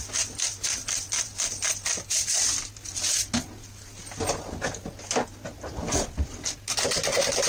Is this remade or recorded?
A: recorded